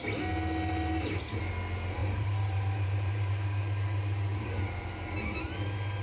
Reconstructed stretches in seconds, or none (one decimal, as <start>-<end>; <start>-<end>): 2.0-3.3